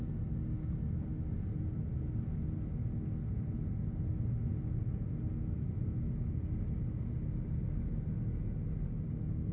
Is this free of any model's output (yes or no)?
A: yes